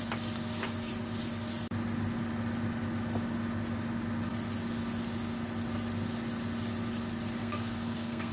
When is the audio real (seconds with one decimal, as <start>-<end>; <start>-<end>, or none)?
0.0-7.4

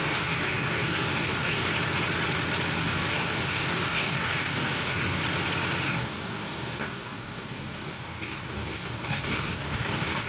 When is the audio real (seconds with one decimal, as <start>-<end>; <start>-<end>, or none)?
1.7-2.8; 5.2-5.8